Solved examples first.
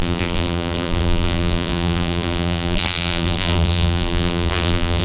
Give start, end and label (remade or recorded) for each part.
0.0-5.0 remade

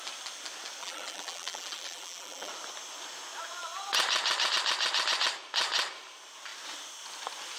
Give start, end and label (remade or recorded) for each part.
0.0-0.8 recorded; 0.8-2.5 remade; 2.5-7.6 recorded

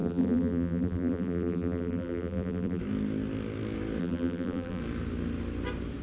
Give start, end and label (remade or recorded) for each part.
0.0-2.8 remade; 2.8-4.0 recorded; 4.0-4.8 remade; 4.8-6.0 recorded

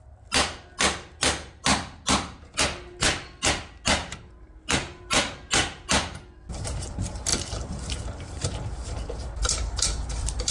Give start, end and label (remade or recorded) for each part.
0.0-7.3 recorded; 7.3-7.8 remade; 7.8-9.4 recorded; 9.4-10.5 remade